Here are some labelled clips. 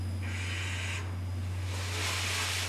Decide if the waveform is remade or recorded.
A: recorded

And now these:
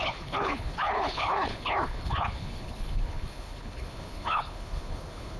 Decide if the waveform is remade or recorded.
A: remade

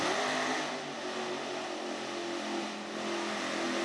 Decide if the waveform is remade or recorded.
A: recorded